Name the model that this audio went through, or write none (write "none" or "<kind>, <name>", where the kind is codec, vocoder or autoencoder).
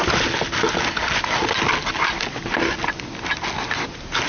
none